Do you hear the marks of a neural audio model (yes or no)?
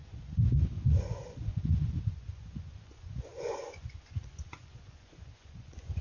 yes